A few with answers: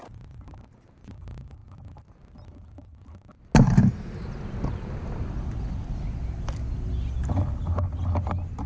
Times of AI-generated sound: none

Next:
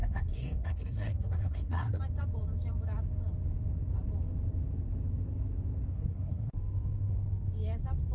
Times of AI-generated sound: 0.0-2.0 (codec, SNAC); 5.9-6.5

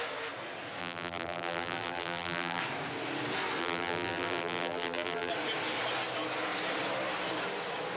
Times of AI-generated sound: 0.8-2.6 (vocoder, BigVGAN v2); 3.6-5.3

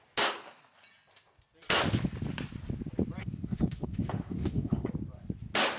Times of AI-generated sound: 3.2-4.9 (autoencoder, DAC-VAE)

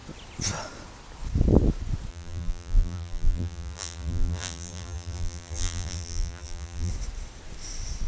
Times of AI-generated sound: 2.1-6.9 (vocoder, BigVGAN v2)

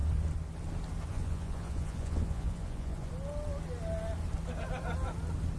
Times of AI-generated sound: 1.1-3.1 (vocoder, Vocos)